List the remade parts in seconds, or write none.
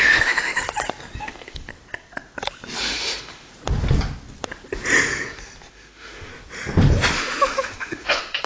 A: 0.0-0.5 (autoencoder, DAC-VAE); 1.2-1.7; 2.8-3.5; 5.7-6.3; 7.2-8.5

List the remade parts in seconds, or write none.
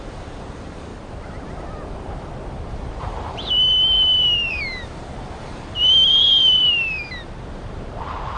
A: 0.0-0.9 (vocoder, BigVGAN v2); 2.5-8.4